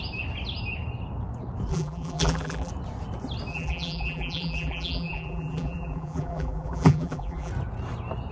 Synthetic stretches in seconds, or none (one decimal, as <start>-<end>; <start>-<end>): 1.7-2.7; 3.5-7.5